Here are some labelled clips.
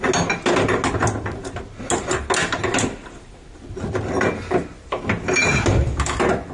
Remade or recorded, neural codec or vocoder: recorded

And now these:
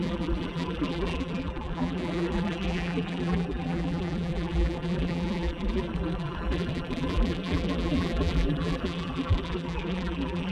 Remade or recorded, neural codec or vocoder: remade, vocoder, BigVGAN v2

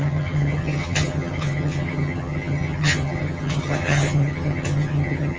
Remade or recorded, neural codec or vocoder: remade, vocoder, HiFi-GAN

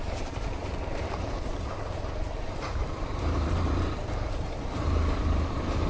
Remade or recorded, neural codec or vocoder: remade, vocoder, BigVGAN v2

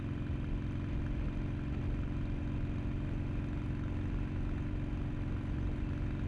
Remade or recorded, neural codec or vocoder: recorded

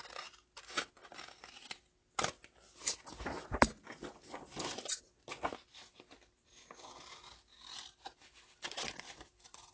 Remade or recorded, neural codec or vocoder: recorded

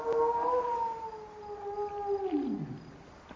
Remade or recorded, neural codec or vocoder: recorded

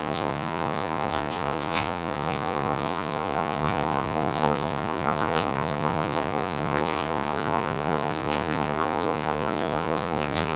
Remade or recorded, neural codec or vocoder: remade, vocoder, Vocos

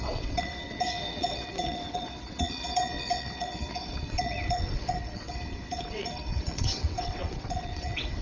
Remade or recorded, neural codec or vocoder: remade, vocoder, WaveNeXt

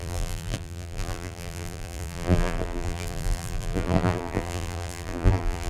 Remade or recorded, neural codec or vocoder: remade, vocoder, BigVGAN v2